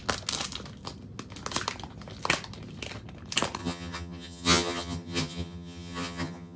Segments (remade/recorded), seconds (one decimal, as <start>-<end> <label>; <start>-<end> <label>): 0.0-3.6 recorded; 3.6-6.6 remade